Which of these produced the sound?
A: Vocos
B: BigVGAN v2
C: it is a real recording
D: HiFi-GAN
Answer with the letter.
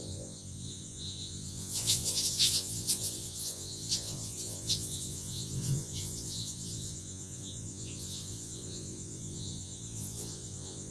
A